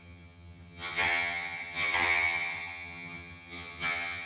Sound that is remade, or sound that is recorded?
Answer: remade